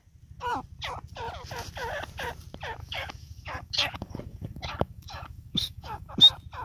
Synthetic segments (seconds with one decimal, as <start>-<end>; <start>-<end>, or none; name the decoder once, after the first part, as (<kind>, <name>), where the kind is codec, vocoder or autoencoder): 2.8-6.1 (codec, DAC)